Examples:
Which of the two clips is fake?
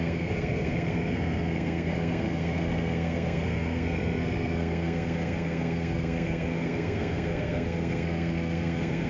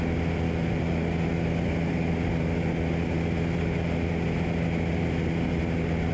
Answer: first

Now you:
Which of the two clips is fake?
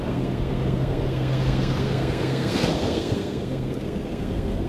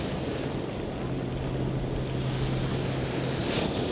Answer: first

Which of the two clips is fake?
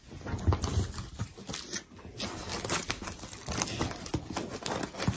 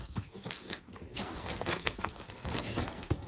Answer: second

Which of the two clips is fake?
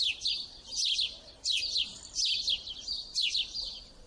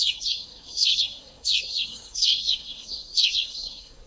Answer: second